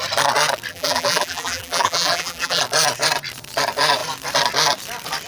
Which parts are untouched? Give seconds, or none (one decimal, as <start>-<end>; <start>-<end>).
0.0-0.7; 2.6-5.3

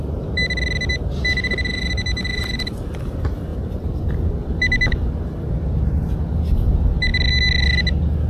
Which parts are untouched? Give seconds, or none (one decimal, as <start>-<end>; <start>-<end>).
0.0-0.9; 2.9-3.5; 4.1-8.3

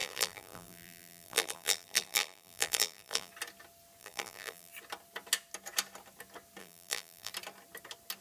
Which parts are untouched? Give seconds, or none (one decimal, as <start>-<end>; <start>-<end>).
3.3-4.0; 4.7-6.6; 7.3-8.2

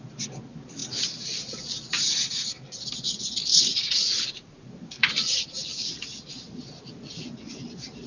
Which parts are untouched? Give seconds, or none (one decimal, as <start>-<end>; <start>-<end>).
0.0-3.5; 4.7-8.1

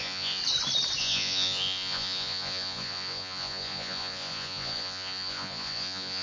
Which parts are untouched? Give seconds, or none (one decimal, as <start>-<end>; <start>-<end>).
0.4-1.0

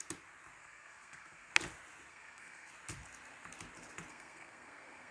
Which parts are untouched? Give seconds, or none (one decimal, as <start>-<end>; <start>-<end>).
0.0-0.6; 1.5-2.1; 2.7-4.1